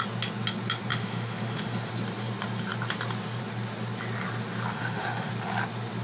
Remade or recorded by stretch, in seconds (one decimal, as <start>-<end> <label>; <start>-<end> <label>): 0.0-0.9 recorded; 0.9-1.9 remade; 1.9-4.7 recorded; 4.7-5.3 remade; 5.3-6.0 recorded